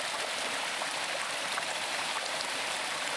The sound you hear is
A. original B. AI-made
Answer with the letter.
B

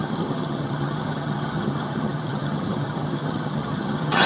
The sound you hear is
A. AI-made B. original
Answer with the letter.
A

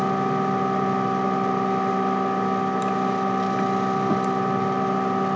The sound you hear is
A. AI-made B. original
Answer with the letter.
B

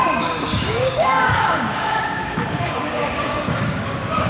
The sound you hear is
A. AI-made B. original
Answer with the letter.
A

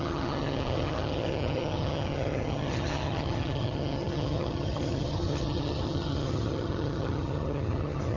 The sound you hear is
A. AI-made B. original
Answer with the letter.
A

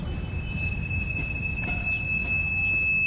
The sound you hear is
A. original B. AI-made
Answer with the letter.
A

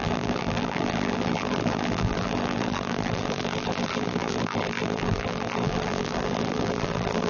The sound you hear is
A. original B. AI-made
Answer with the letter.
B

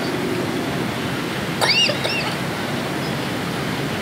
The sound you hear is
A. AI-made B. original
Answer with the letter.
B